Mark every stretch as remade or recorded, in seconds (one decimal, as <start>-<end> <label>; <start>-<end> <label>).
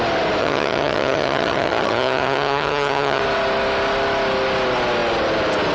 0.0-0.4 recorded; 0.4-3.2 remade; 3.2-5.7 recorded